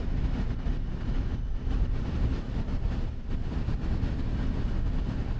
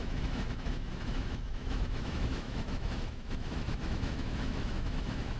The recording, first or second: first